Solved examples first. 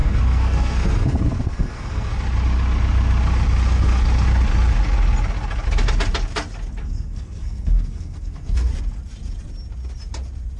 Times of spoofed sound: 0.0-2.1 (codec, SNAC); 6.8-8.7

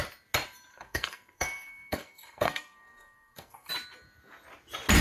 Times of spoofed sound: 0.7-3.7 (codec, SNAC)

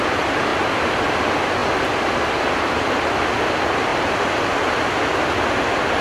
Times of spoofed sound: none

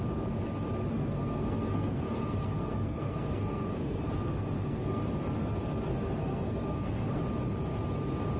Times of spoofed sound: 0.9-5.0 (codec, SNAC); 5.9-7.2

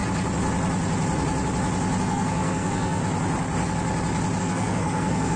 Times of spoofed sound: 2.0-3.0 (codec, SNAC); 4.4-5.4

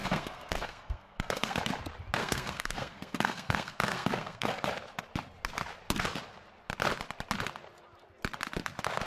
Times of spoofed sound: 0.0-1.6 (codec, SNAC); 2.2-4.6

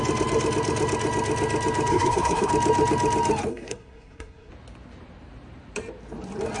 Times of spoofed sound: 1.9-2.5 (codec, SNAC); 3.5-4.5